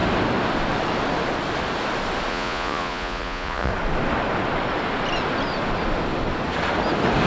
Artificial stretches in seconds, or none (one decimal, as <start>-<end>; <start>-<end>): 2.3-3.7